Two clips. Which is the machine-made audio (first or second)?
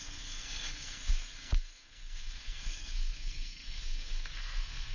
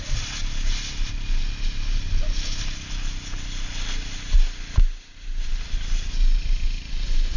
first